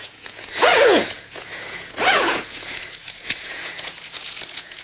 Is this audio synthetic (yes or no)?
yes